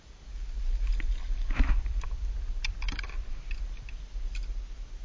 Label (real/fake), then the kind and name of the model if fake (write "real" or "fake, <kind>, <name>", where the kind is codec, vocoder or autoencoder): real